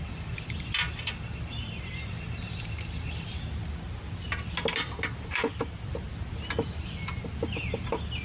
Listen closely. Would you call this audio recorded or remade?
recorded